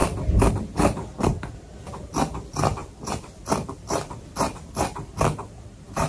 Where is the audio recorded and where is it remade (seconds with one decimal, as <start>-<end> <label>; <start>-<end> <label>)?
0.0-2.8 recorded; 2.8-4.3 remade; 4.3-6.1 recorded